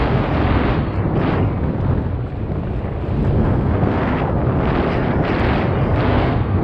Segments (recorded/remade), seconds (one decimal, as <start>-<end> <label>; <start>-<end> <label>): 0.0-3.4 recorded; 3.4-4.2 remade; 4.2-6.1 recorded; 6.1-6.6 remade